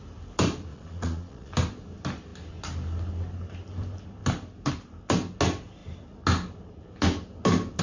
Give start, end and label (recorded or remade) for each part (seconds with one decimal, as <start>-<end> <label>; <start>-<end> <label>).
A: 0.0-0.7 recorded; 0.7-1.5 remade; 1.5-7.8 recorded